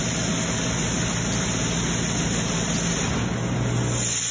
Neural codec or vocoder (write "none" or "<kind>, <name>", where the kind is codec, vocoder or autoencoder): none